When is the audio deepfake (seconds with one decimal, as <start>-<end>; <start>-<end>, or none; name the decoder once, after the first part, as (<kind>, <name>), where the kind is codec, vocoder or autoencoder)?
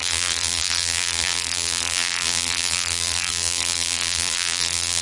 0.0-5.0 (vocoder, BigVGAN v2)